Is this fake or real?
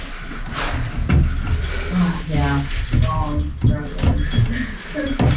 real